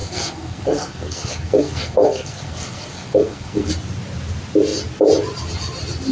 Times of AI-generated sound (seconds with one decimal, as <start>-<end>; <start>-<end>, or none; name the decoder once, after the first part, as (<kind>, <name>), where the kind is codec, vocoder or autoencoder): 0.0-3.7 (codec, SNAC)